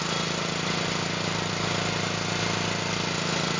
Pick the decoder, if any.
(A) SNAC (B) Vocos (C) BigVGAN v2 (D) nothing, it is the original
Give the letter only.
D